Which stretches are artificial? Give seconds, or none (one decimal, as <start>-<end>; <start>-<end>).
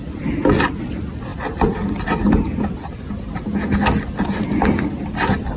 none